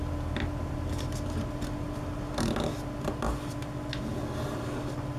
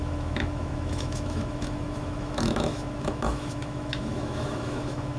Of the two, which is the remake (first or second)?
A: second